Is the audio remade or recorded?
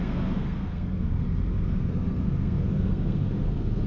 remade